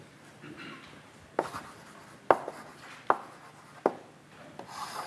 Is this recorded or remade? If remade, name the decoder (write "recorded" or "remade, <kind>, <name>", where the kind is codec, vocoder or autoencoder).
recorded